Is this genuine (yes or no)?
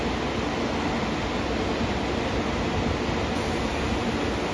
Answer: yes